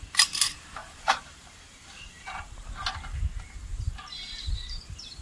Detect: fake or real fake